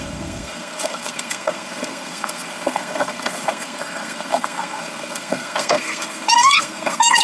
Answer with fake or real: fake